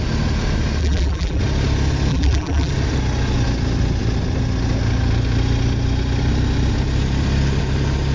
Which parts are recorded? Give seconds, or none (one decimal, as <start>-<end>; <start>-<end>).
0.0-0.8; 1.4-2.1; 2.7-8.1